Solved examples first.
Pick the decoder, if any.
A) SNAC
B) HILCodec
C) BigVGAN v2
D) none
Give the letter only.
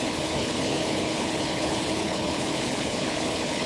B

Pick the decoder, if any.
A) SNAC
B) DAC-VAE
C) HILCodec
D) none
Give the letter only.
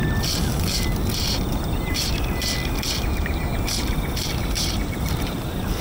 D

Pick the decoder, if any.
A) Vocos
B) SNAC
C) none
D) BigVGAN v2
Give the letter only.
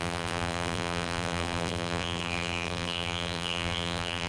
D